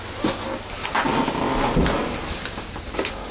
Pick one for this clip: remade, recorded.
recorded